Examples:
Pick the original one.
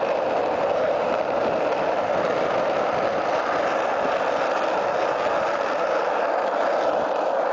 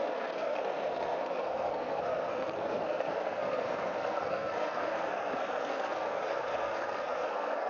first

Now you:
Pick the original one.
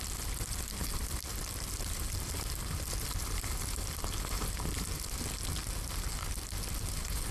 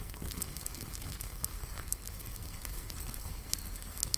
first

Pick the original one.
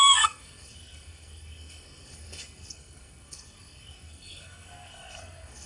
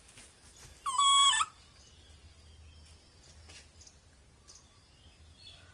second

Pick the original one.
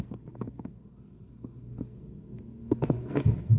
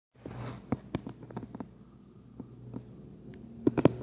second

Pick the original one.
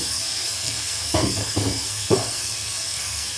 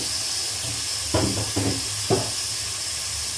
second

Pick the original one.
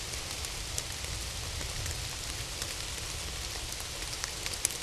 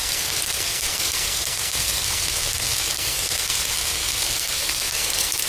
first